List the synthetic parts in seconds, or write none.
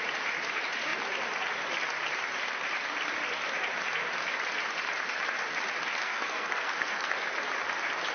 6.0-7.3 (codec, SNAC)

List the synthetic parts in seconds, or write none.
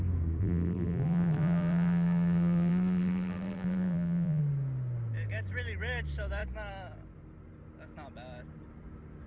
0.4-4.4 (vocoder, BigVGAN v2)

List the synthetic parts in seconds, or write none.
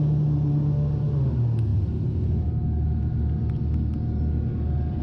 none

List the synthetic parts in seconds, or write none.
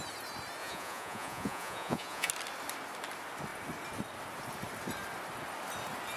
0.6-2.3 (vocoder, Vocos)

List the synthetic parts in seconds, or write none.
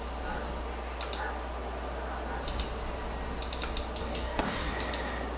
4.0-4.7 (codec, DAC)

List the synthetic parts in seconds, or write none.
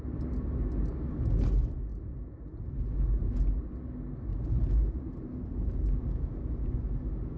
1.9-3.7 (vocoder, BigVGAN v2); 4.3-6.7